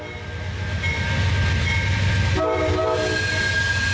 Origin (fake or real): real